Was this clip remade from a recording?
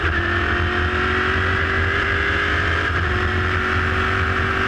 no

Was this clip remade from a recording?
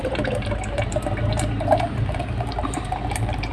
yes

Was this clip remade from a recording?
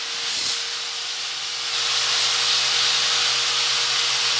no